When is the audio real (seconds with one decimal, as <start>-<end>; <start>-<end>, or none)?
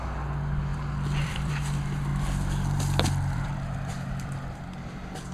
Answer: none